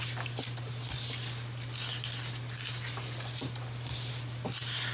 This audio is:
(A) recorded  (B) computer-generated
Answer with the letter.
A